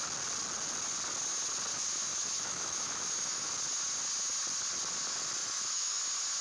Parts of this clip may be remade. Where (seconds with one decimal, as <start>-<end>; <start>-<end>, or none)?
1.7-3.5; 5.4-6.0